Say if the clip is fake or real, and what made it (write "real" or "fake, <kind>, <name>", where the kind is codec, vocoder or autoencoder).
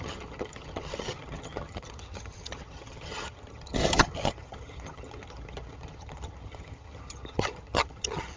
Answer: fake, vocoder, HiFi-GAN